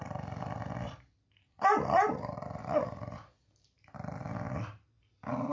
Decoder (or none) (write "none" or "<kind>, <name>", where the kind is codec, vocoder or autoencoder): vocoder, BigVGAN v2